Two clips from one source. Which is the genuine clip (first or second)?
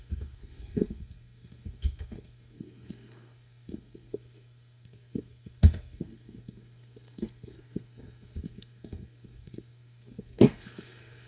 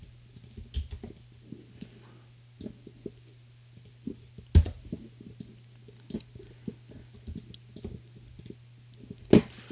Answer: second